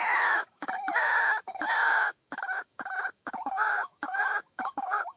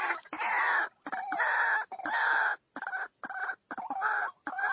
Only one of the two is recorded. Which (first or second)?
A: second